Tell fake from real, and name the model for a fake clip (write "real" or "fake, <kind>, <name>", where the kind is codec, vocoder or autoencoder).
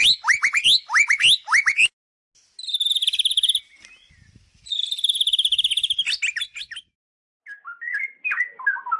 real